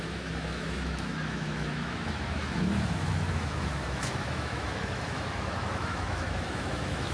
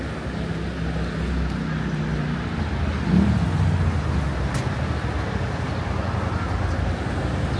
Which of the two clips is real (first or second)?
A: second